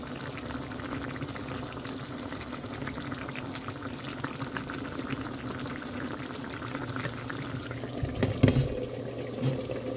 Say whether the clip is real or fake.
real